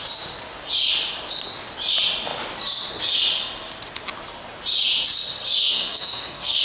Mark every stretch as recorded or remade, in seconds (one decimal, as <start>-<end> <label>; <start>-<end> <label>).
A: 0.0-5.6 recorded; 5.6-6.6 remade